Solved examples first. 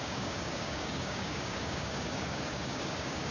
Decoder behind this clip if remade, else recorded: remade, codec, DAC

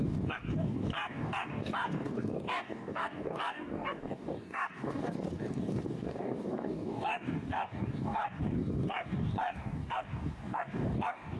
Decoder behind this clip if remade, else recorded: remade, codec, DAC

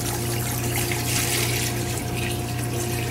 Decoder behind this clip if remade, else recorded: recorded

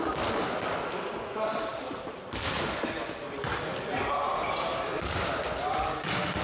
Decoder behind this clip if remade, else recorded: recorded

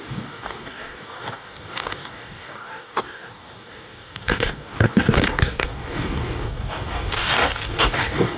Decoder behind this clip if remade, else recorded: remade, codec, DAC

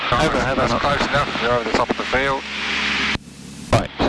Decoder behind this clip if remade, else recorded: recorded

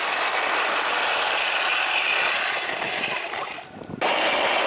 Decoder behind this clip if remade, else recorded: recorded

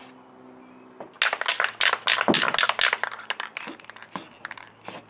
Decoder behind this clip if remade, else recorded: recorded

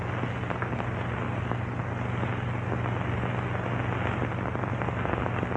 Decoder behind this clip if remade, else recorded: recorded